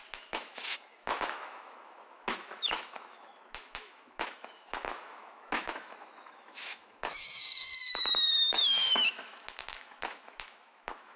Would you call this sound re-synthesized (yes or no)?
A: yes